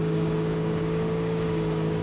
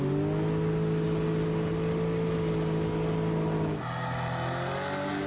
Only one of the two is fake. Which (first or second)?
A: first